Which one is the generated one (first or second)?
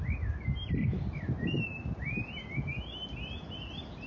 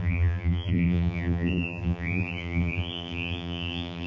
second